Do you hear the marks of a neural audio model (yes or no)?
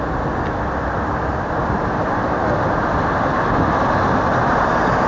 no